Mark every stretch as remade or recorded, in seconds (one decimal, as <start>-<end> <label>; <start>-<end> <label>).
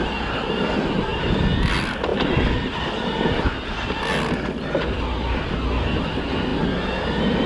0.0-7.5 recorded